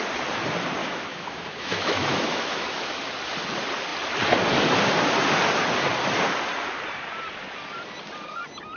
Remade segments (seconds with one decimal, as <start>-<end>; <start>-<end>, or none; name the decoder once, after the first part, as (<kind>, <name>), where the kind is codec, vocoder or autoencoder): 0.8-3.0 (autoencoder, DAC-VAE)